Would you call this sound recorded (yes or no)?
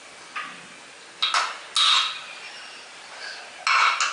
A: yes